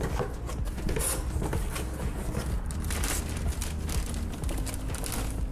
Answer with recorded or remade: recorded